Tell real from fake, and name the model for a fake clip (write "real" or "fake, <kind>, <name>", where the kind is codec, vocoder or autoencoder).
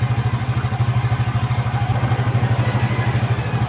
real